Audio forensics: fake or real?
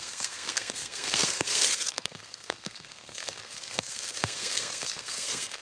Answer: fake